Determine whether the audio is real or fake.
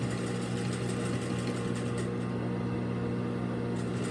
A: real